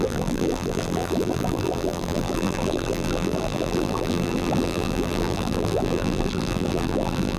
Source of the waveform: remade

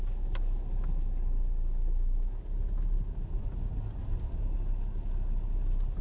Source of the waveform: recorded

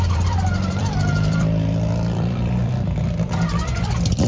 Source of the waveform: remade